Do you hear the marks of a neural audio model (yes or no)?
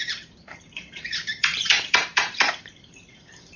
yes